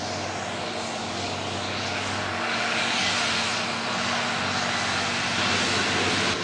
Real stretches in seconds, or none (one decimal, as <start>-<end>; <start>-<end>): 0.0-1.0; 3.1-6.4